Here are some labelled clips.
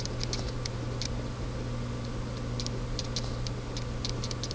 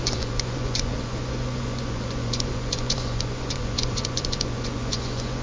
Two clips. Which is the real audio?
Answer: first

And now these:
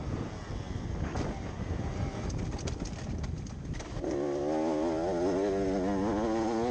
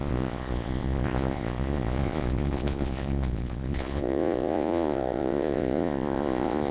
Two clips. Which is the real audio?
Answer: first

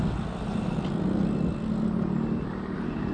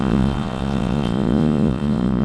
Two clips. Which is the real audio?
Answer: first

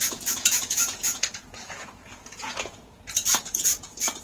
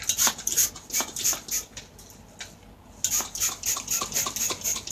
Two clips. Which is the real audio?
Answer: second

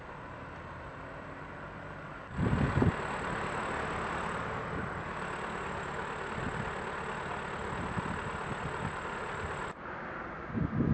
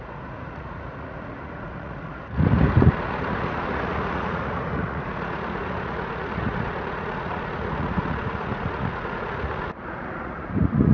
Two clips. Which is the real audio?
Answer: first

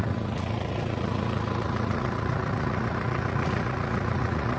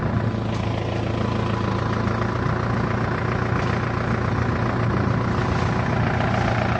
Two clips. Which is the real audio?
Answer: second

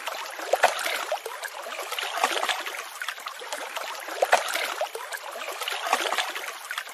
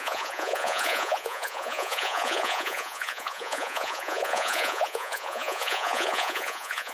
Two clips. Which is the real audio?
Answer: first